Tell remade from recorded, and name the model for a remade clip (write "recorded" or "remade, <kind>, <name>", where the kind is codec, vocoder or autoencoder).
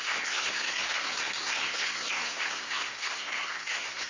remade, codec, SNAC